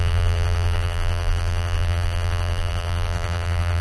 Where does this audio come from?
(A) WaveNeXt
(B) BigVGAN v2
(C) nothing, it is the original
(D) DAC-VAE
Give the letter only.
B